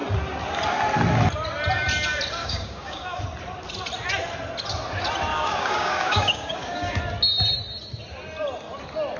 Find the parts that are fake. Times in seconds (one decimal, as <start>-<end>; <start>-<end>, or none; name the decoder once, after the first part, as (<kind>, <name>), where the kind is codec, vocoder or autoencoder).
2.4-3.2 (codec, DAC); 5.3-7.0